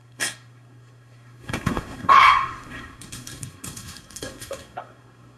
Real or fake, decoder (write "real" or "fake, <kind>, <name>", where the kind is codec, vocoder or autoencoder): fake, codec, SNAC